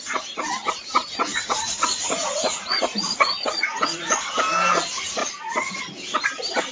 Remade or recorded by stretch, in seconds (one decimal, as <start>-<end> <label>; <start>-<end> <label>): 0.0-1.3 recorded; 1.3-4.3 remade; 4.3-5.2 recorded; 5.2-5.8 remade; 5.8-6.7 recorded